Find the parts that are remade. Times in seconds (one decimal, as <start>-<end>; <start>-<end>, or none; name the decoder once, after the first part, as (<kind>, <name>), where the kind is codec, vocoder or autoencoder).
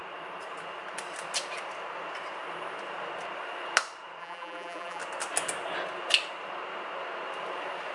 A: 4.2-5.0 (vocoder, BigVGAN v2)